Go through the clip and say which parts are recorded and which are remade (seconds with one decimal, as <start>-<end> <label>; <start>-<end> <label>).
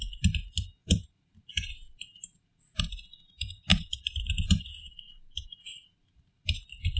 0.0-0.8 recorded; 0.8-2.8 remade; 2.8-3.7 recorded; 3.7-7.0 remade